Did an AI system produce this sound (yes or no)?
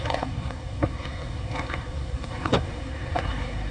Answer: yes